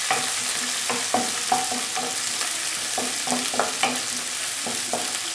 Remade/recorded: recorded